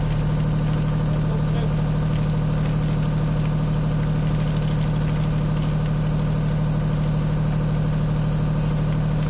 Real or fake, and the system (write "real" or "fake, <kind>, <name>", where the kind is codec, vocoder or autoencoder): real